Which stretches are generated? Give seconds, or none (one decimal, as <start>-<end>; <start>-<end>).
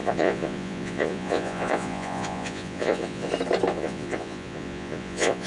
0.0-3.3; 3.7-5.5